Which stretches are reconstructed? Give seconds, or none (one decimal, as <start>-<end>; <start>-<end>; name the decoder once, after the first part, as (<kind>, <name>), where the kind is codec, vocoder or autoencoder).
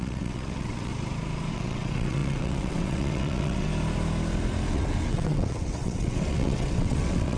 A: 0.0-0.9 (vocoder, WaveNeXt); 1.5-3.7; 4.7-7.4